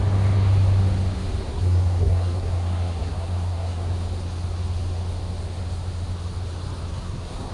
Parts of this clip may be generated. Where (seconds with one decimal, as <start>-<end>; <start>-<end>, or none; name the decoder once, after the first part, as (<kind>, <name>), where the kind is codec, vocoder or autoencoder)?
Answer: 1.5-3.9 (codec, SNAC); 6.9-7.5